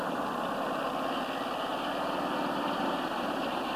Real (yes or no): yes